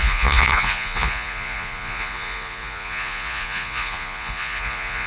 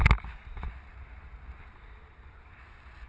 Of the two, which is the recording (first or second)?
second